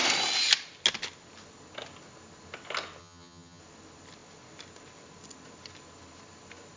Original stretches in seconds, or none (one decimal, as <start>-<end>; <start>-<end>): 0.0-3.0; 3.6-6.8